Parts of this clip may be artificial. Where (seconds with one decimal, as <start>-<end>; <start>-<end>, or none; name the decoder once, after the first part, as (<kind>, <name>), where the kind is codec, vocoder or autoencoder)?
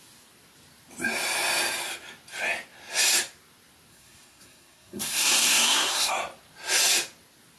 3.9-6.1 (codec, SNAC)